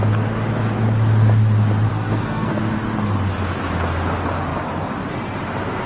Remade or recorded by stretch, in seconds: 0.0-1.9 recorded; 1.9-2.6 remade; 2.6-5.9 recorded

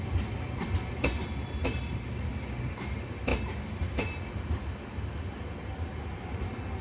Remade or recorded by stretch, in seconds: 0.0-2.3 recorded; 2.3-2.8 remade; 2.8-6.8 recorded

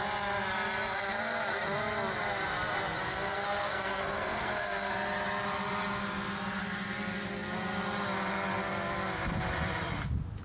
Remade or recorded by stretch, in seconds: 0.0-3.0 recorded; 3.0-4.9 remade; 4.9-10.4 recorded

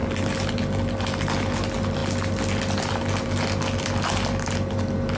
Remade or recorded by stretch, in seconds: 0.0-5.2 recorded

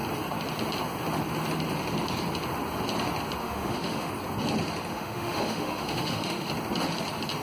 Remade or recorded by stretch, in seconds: 0.0-3.4 recorded; 3.4-4.1 remade; 4.1-4.9 recorded; 4.9-6.5 remade; 6.5-7.4 recorded

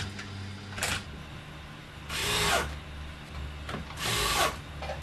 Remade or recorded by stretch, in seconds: 0.0-5.0 recorded